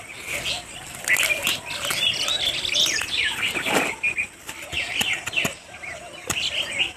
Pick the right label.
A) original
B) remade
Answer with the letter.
A